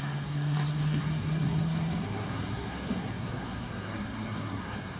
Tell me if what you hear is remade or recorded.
remade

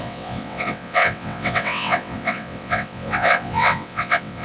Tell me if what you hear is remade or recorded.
remade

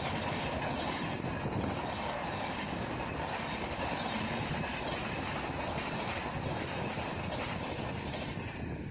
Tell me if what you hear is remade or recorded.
recorded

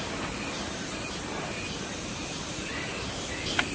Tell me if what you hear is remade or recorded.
recorded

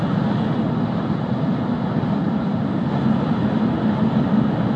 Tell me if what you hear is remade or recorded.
recorded